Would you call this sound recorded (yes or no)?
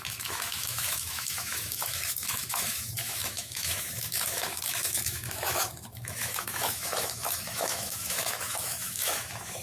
no